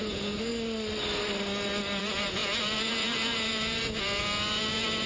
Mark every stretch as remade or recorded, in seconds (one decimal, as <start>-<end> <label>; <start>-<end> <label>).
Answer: 0.0-0.5 remade; 0.5-2.0 recorded; 2.0-5.1 remade